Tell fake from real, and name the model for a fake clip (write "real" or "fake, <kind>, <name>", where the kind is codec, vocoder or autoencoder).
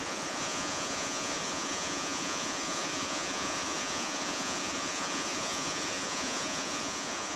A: fake, vocoder, Vocos